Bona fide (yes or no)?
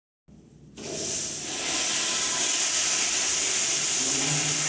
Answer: yes